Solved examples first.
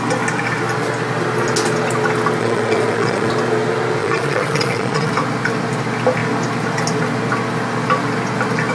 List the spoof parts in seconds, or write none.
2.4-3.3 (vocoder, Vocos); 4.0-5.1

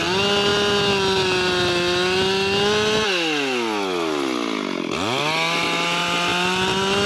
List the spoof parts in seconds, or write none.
none

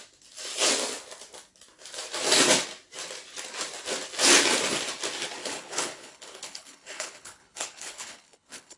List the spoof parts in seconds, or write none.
5.4-8.8 (codec, HILCodec)

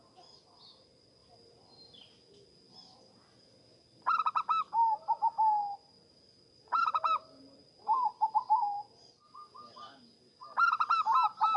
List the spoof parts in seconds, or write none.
none

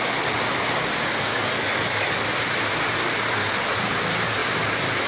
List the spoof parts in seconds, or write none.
1.3-2.2 (codec, DAC); 3.4-3.9

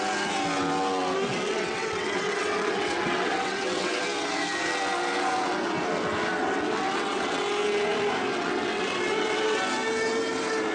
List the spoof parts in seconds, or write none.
1.3-4.0 (vocoder, WaveNeXt); 6.4-7.4; 8.3-9.6